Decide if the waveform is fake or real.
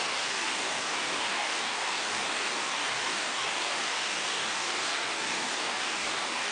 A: fake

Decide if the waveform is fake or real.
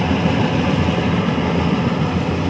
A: real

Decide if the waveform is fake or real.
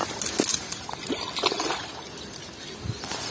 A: real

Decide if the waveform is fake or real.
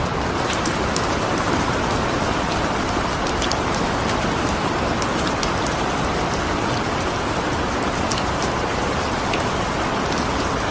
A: real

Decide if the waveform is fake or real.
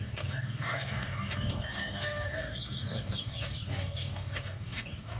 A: fake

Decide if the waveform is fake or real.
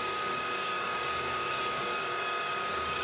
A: fake